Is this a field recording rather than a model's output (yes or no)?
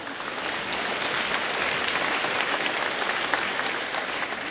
yes